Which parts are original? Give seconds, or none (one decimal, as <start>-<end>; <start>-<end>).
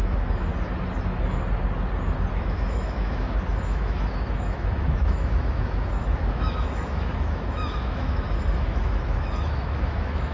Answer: 0.5-2.3